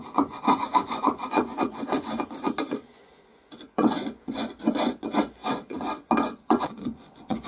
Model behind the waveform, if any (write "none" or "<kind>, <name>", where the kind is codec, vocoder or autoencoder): vocoder, Vocos